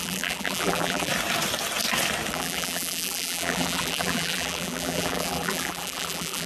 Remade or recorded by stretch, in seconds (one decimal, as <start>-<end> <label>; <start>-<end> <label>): 0.0-1.1 remade; 1.1-2.3 recorded; 2.3-6.5 remade

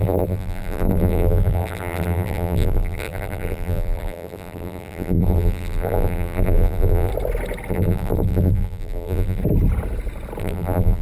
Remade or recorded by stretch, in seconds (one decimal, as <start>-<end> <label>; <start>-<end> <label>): 0.0-7.1 remade; 7.1-7.7 recorded; 7.7-9.4 remade; 9.4-10.4 recorded; 10.4-11.0 remade

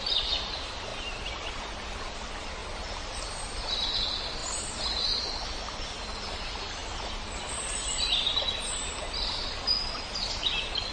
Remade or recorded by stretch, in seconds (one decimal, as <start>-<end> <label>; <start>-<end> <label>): 0.0-4.4 recorded; 4.4-5.2 remade; 5.2-10.9 recorded

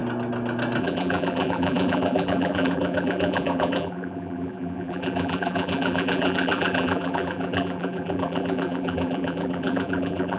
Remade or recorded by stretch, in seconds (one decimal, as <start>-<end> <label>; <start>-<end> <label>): 0.0-0.8 recorded; 0.8-10.4 remade

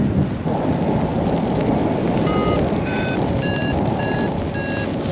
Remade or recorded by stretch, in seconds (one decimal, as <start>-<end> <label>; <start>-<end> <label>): 0.0-1.1 recorded; 1.1-4.2 remade; 4.2-5.1 recorded

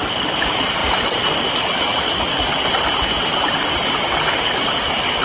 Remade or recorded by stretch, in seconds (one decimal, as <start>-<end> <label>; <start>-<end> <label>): 0.0-5.2 recorded

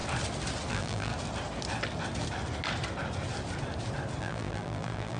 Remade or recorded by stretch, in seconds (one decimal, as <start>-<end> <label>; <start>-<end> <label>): 0.0-0.7 recorded; 0.7-1.1 remade; 1.1-4.2 recorded; 4.2-5.2 remade

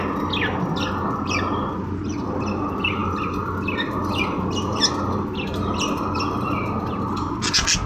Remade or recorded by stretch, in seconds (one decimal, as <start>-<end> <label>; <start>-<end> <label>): 0.0-7.9 recorded